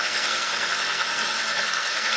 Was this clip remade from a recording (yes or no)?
yes